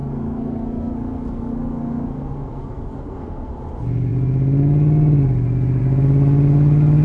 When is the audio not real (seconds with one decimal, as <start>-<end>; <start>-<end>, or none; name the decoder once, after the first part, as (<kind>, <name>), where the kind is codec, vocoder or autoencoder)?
0.0-3.5 (codec, SNAC)